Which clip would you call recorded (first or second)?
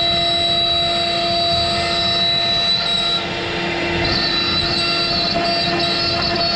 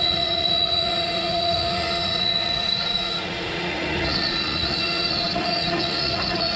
first